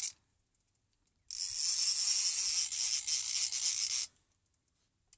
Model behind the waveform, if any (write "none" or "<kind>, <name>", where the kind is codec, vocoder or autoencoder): none